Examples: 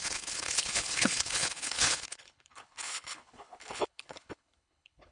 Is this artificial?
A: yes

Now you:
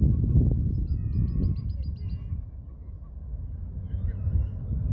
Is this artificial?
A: no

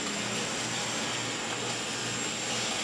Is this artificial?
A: no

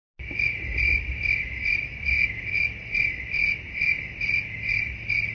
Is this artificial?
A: no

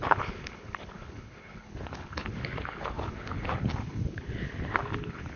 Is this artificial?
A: yes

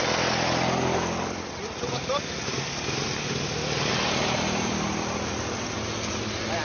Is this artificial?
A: no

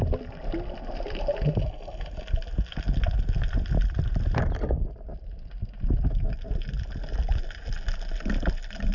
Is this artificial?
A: no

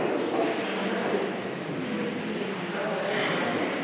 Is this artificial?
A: no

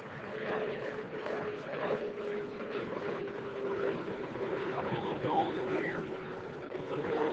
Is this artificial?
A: yes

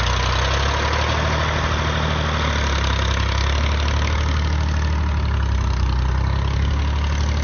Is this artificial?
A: no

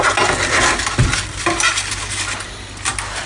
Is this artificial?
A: no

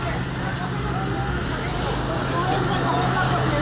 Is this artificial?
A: no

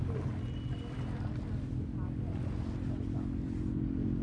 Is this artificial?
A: no